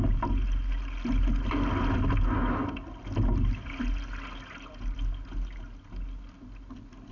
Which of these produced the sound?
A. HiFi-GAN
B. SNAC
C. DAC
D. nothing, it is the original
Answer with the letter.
D